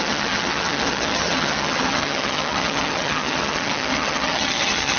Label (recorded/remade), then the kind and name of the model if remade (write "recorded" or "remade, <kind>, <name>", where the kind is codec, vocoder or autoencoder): remade, vocoder, HiFi-GAN